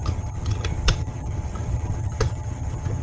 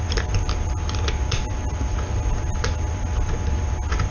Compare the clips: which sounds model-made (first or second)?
first